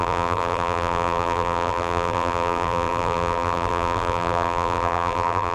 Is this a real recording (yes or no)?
no